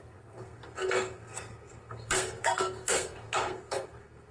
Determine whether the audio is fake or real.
fake